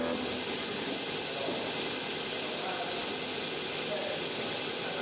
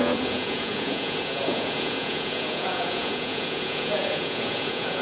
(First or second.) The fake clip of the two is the second